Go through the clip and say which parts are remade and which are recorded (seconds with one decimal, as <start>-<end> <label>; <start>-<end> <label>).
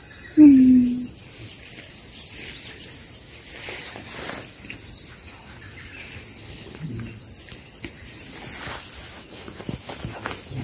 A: 0.0-6.4 recorded; 6.4-6.9 remade; 6.9-10.6 recorded